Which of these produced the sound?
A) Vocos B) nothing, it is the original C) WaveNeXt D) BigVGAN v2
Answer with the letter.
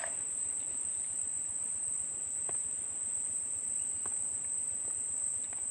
B